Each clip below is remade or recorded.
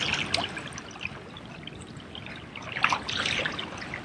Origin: recorded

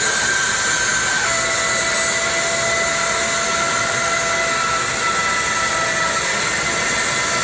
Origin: recorded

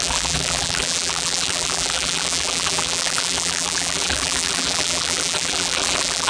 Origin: remade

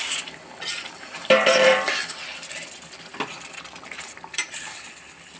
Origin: remade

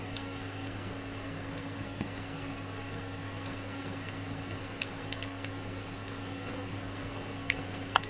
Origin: remade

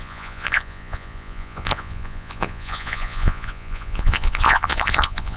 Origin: remade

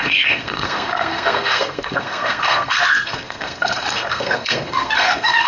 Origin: remade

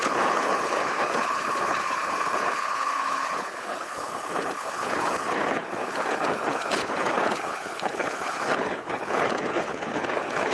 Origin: remade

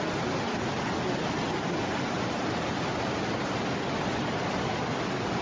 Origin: recorded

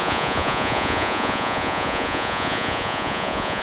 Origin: remade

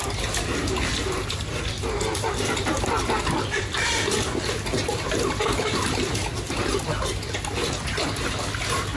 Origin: recorded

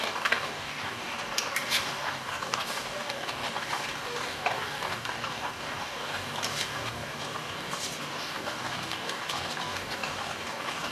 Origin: remade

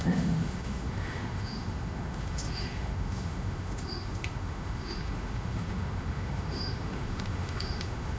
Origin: remade